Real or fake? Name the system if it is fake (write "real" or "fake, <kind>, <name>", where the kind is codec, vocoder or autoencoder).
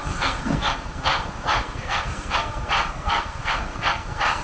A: fake, codec, SNAC